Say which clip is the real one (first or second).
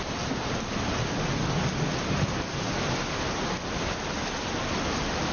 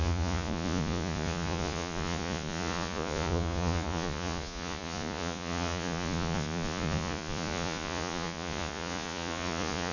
first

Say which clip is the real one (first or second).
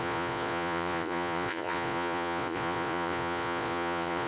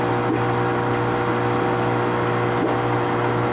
second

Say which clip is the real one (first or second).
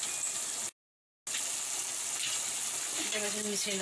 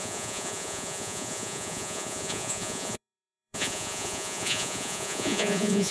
first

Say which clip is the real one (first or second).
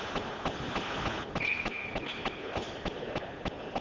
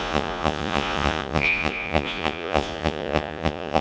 first